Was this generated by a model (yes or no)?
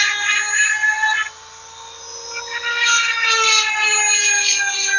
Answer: no